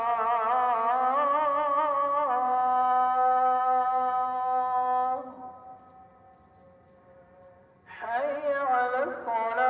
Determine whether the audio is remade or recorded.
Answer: recorded